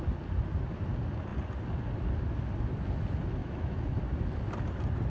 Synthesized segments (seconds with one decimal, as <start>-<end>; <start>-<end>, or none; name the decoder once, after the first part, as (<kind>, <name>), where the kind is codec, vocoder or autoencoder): 3.4-4.0 (autoencoder, DAC-VAE)